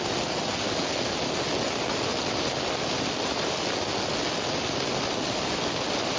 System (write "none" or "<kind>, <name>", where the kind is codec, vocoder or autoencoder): none